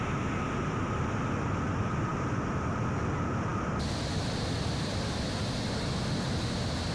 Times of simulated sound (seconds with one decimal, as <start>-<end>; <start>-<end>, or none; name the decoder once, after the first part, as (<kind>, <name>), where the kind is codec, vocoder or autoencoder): none